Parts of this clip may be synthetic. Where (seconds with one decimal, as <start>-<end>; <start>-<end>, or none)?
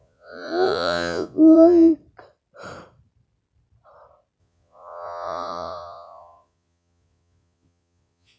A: 0.0-1.9; 4.4-8.4